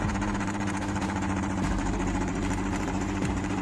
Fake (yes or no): yes